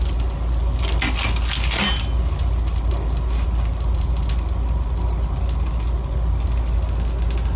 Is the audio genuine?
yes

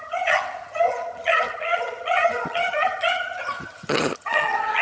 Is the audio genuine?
no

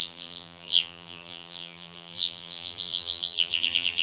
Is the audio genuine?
no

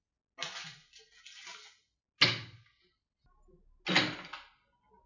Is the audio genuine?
yes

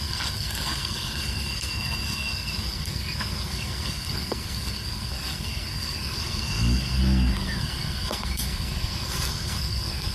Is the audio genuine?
no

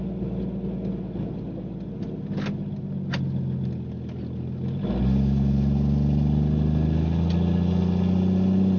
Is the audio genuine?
yes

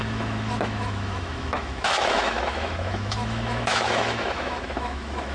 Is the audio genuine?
no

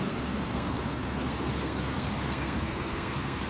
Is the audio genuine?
no